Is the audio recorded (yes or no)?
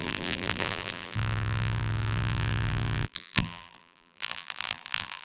no